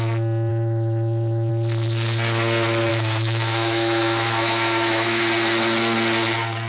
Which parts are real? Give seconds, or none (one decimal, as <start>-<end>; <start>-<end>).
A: 0.0-0.5; 1.5-2.9; 5.2-6.7